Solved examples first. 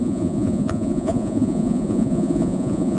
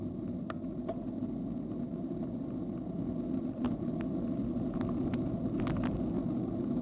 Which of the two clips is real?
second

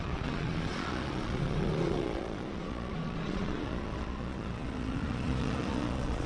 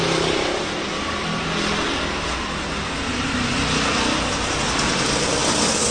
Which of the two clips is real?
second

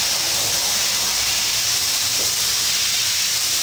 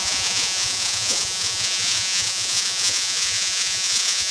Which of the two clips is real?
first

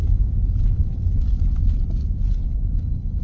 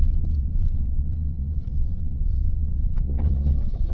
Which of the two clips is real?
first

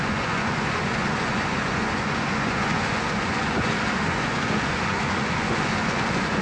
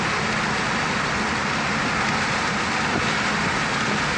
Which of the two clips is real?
second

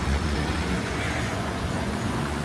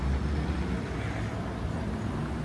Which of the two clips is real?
second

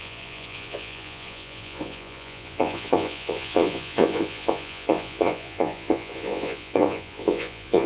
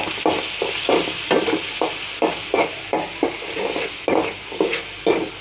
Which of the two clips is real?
second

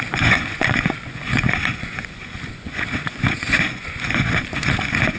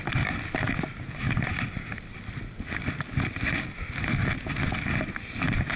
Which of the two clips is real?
second